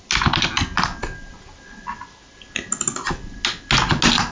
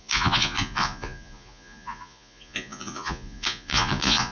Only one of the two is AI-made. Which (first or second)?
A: second